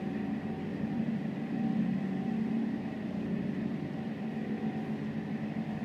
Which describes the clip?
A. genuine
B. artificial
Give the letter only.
B